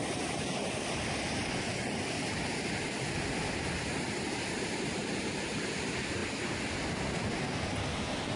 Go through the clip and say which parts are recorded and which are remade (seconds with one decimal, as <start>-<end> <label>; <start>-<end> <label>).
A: 0.0-8.4 recorded

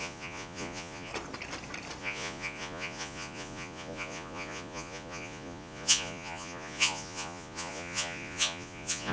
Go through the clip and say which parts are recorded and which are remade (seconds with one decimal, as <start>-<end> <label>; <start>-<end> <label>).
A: 0.0-1.1 remade; 1.1-2.0 recorded; 2.0-9.1 remade

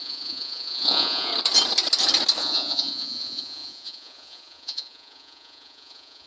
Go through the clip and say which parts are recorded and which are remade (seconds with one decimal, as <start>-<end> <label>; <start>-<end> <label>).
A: 0.0-1.3 remade; 1.3-2.4 recorded; 2.4-6.3 remade

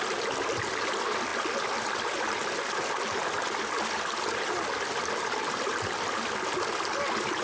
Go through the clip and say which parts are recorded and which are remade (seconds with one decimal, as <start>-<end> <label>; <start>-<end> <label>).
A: 0.0-7.4 recorded

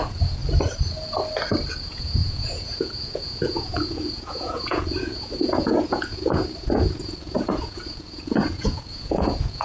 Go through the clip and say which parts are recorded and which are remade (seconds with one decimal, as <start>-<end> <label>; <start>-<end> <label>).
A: 0.0-0.4 remade; 0.4-1.7 recorded; 1.7-9.6 remade

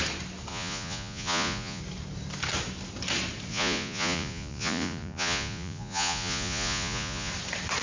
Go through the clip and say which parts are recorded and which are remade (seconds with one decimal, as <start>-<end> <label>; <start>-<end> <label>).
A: 0.0-0.5 recorded; 0.5-1.8 remade; 1.8-3.5 recorded; 3.5-7.3 remade; 7.3-7.8 recorded

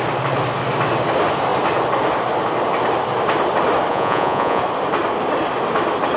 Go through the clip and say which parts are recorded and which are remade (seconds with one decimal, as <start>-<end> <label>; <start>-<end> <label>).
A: 0.0-3.9 recorded; 3.9-4.6 remade; 4.6-6.2 recorded